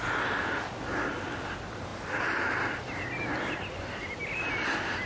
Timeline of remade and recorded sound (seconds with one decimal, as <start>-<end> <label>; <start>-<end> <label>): 0.0-5.1 recorded